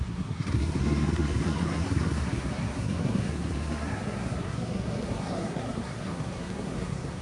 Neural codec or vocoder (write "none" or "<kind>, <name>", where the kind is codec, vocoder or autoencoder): codec, SNAC